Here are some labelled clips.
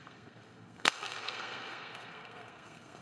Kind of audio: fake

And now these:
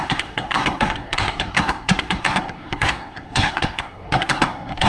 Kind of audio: fake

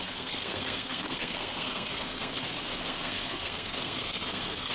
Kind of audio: fake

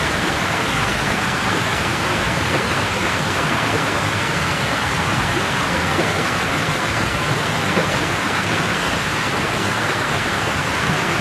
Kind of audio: fake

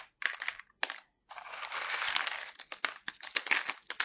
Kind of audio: real